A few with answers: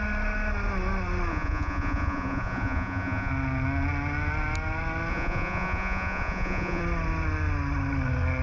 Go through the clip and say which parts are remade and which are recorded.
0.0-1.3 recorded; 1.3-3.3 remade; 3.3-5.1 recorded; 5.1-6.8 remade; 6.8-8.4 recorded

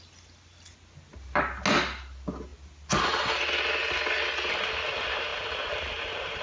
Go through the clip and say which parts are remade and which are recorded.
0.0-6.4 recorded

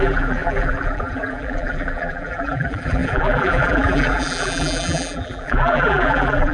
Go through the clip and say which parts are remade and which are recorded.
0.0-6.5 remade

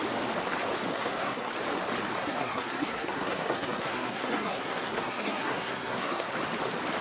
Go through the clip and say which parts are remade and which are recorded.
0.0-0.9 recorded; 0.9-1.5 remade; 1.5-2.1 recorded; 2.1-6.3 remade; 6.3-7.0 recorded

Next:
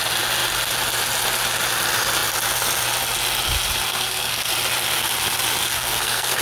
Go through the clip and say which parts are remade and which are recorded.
0.0-3.9 recorded; 3.9-4.5 remade; 4.5-5.6 recorded; 5.6-6.4 remade

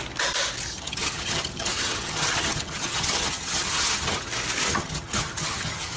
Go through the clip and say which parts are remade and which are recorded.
0.0-0.7 recorded; 0.7-4.3 remade; 4.3-4.7 recorded; 4.7-6.0 remade